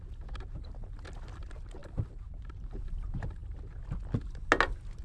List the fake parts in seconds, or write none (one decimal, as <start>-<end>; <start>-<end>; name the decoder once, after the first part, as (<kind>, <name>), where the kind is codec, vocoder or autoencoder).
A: none